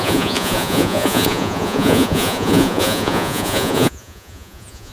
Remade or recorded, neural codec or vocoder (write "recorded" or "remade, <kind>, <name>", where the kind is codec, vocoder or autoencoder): remade, vocoder, Vocos